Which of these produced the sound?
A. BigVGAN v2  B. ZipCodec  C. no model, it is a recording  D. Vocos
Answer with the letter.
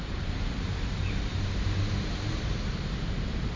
A